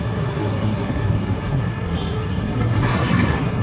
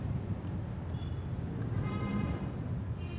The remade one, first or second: first